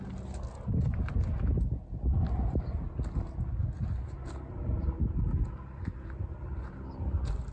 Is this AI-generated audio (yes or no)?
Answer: no